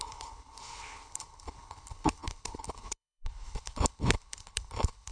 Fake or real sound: fake